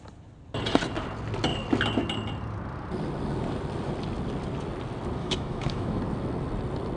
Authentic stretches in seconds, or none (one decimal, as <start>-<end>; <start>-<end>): 0.0-5.2; 6.0-7.0

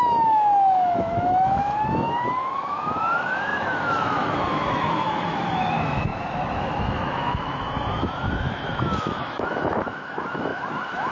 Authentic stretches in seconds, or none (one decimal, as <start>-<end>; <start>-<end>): none

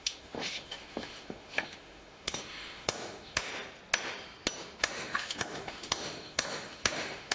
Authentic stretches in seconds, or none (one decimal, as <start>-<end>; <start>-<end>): 3.5-4.8

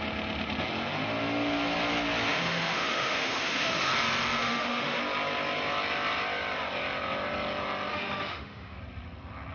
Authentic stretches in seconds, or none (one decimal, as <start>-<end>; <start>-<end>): 0.0-2.3; 3.9-4.4; 5.0-7.9; 8.8-9.5

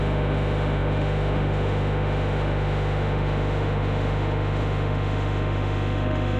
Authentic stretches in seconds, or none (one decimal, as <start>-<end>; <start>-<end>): none

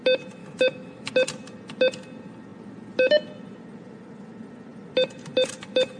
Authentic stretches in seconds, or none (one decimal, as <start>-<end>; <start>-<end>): 0.0-0.4; 1.1-6.0